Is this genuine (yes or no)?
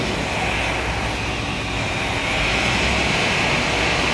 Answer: yes